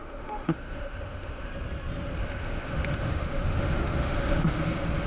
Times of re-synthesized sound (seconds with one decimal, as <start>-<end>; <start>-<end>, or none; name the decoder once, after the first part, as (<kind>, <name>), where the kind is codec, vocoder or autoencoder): 0.0-1.5 (autoencoder, DAC-VAE); 2.2-4.6